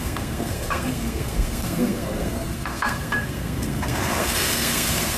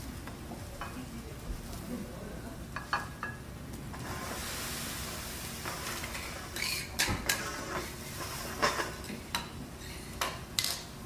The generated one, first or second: first